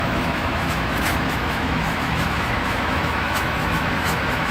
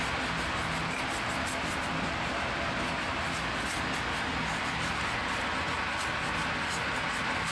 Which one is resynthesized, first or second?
first